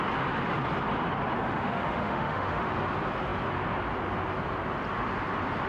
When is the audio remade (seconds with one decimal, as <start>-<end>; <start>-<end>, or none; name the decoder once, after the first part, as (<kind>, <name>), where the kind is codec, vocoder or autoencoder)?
1.5-2.7 (autoencoder, DAC-VAE)